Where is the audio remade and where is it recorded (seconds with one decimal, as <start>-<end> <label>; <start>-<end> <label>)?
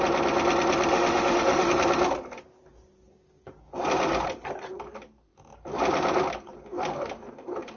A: 0.0-0.9 recorded; 0.9-1.7 remade; 1.7-7.8 recorded